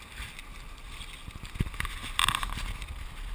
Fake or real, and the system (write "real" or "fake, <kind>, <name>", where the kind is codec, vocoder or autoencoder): fake, vocoder, BigVGAN v2